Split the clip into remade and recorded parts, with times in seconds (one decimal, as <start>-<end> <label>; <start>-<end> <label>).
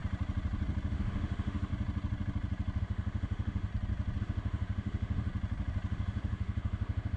0.0-0.9 recorded; 0.9-1.7 remade; 1.7-2.8 recorded; 2.8-3.7 remade; 3.7-4.2 recorded; 4.2-5.3 remade; 5.3-5.9 recorded; 5.9-7.2 remade